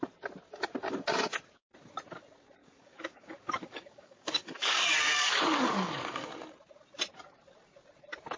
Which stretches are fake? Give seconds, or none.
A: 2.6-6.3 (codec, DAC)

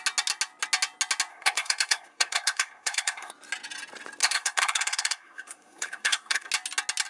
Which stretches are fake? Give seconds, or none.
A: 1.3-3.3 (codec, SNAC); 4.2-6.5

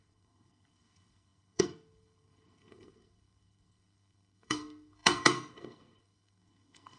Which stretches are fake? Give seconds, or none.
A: 0.0-7.0 (codec, SNAC)